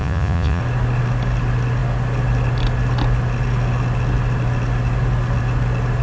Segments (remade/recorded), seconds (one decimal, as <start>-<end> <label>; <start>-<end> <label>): 0.0-0.6 remade; 0.6-6.0 recorded